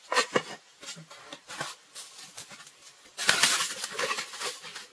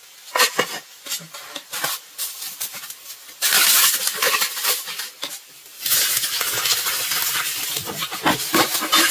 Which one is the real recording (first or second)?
first